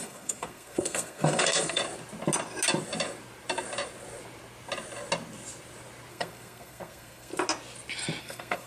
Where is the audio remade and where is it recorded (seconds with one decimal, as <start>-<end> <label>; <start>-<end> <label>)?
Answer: 0.0-1.8 remade; 1.8-6.1 recorded; 6.1-7.3 remade; 7.3-8.2 recorded; 8.2-8.7 remade